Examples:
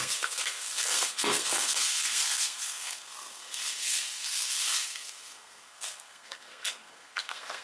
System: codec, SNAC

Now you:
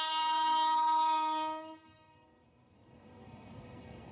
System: codec, SNAC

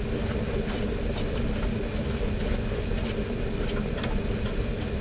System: none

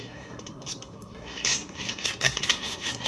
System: codec, SNAC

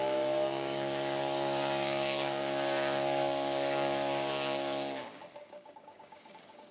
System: codec, DAC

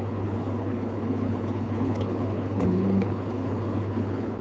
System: codec, HILCodec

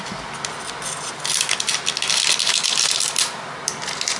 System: none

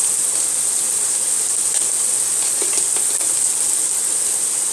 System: none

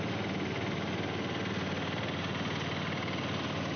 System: none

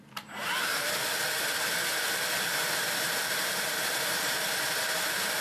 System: none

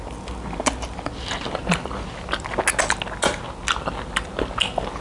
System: none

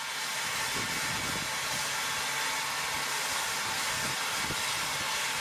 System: none